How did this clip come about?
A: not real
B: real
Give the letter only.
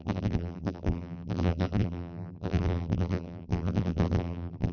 A